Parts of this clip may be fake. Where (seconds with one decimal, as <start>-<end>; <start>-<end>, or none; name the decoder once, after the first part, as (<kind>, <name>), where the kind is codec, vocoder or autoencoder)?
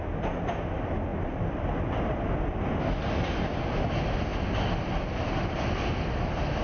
none